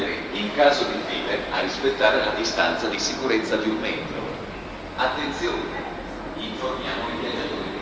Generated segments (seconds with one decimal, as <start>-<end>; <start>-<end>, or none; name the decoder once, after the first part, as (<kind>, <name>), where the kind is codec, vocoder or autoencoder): none